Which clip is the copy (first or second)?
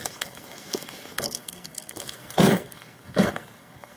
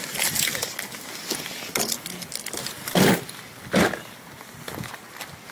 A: first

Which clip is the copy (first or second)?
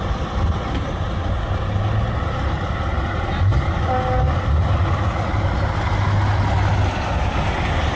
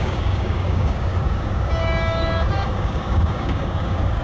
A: second